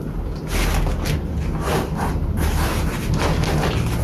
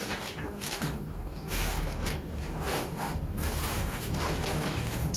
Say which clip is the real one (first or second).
first